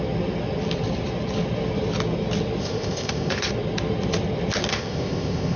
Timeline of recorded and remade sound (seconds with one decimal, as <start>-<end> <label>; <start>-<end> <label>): 0.0-2.6 recorded; 2.6-3.5 remade; 3.5-4.7 recorded; 4.7-5.6 remade